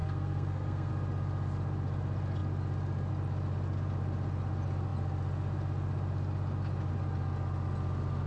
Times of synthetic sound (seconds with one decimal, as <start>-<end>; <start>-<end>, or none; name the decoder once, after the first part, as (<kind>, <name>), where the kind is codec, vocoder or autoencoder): 0.0-0.9 (codec, SNAC)